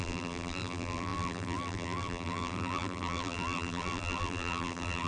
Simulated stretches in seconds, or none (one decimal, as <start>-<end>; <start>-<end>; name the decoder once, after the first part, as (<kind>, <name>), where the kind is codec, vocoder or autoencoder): 0.0-5.1 (vocoder, BigVGAN v2)